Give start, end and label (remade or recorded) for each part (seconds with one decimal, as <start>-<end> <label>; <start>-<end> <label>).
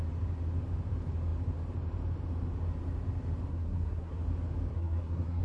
0.0-3.5 recorded; 3.5-4.2 remade; 4.2-4.7 recorded; 4.7-5.4 remade